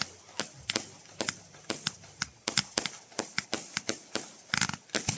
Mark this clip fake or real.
real